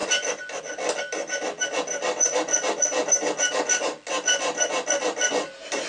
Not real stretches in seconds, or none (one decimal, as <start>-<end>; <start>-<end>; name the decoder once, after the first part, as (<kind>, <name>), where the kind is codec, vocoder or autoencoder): none